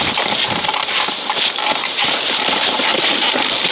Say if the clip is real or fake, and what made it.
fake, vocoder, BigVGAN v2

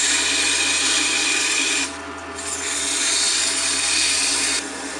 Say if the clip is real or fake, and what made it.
real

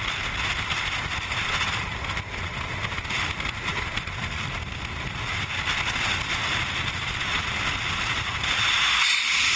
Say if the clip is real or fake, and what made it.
real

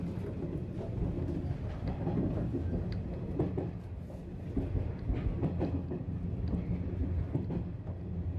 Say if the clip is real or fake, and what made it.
real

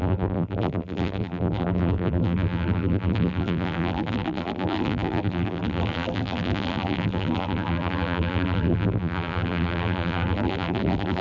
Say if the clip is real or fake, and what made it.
fake, vocoder, BigVGAN v2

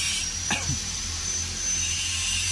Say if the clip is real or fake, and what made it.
fake, vocoder, BigVGAN v2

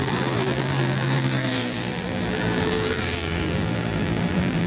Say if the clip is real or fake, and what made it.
fake, vocoder, BigVGAN v2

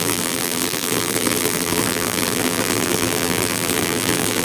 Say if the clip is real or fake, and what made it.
fake, vocoder, BigVGAN v2